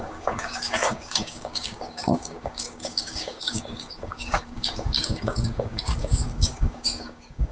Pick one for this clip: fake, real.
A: fake